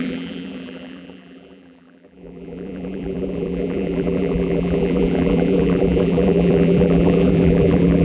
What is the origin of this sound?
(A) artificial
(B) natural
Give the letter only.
A